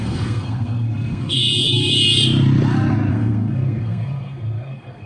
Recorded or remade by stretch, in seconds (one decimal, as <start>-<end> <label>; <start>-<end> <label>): 0.0-1.4 remade; 1.4-3.1 recorded; 3.1-5.1 remade